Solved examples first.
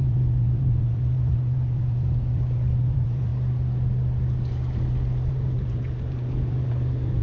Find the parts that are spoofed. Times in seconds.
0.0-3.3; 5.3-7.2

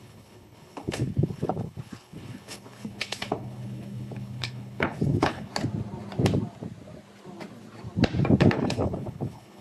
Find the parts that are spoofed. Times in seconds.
0.0-5.5; 8.4-9.6

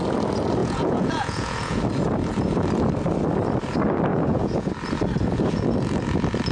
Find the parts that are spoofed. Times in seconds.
0.6-1.8; 4.1-4.7

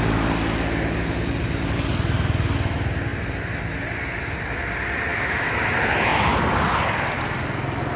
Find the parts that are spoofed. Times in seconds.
5.1-5.6

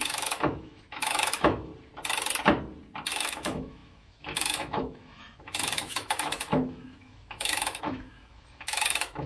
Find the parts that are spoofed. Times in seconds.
0.0-1.7; 3.1-9.3

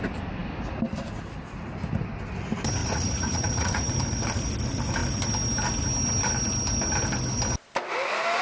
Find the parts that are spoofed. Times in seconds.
2.8-3.9